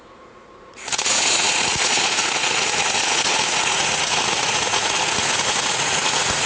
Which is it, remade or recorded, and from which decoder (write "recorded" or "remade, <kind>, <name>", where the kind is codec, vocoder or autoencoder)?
remade, vocoder, Vocos